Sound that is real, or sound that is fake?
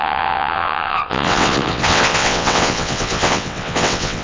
fake